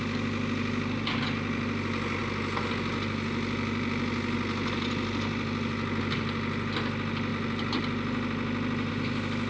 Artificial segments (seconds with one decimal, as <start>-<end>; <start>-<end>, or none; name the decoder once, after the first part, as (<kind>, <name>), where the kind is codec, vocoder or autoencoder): none